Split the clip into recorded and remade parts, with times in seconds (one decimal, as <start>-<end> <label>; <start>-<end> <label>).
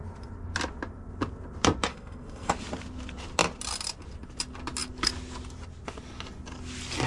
0.0-1.9 recorded; 1.9-2.5 remade; 2.5-7.1 recorded